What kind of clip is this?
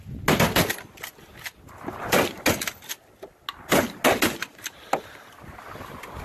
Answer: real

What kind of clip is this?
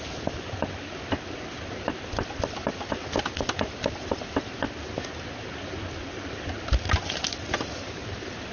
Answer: real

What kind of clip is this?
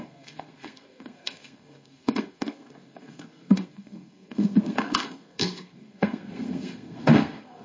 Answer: fake